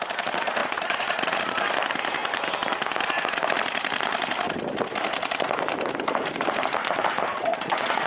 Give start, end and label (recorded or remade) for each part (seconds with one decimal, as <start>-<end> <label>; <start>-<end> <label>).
0.0-0.6 recorded; 0.6-1.4 remade; 1.4-7.3 recorded; 7.3-8.1 remade